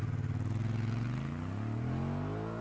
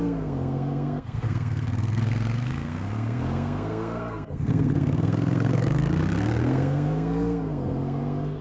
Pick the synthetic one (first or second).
second